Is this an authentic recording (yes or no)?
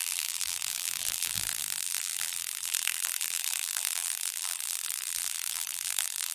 no